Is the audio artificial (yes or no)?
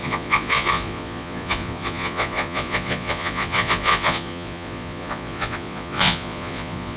yes